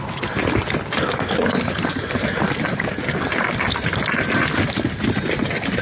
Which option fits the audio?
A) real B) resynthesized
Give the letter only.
A